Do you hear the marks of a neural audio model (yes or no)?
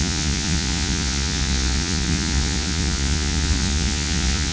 yes